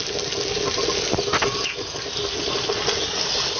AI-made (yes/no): no